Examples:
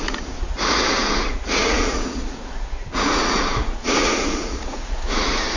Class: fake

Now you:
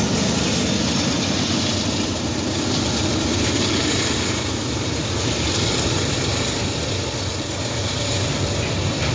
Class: real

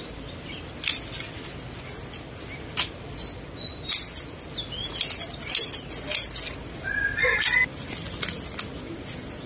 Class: real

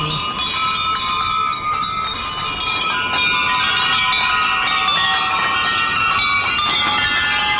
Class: real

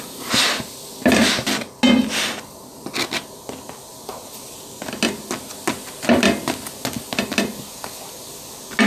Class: real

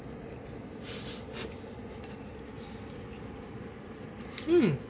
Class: real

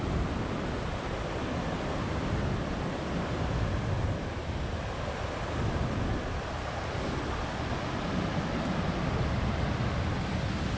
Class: real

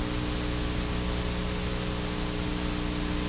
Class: real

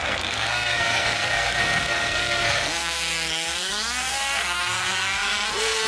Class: fake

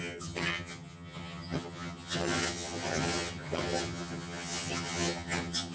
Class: fake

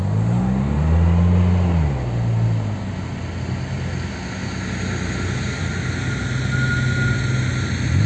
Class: real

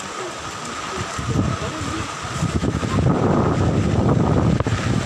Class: fake